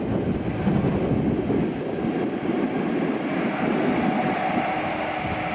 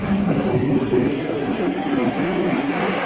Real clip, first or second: first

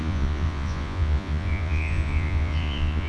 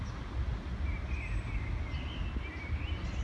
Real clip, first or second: second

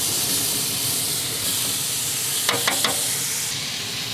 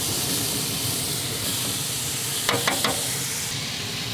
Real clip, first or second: first